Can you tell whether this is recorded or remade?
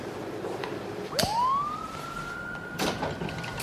recorded